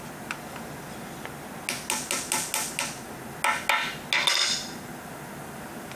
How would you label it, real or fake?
real